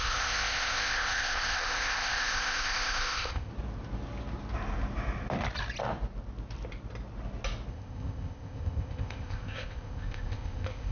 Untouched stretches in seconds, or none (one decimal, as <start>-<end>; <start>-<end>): 3.5-7.7